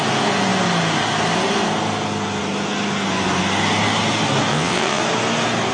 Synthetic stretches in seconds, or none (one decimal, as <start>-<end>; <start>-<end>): 4.5-5.0